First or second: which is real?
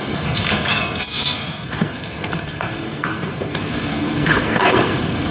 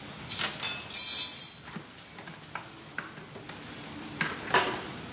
second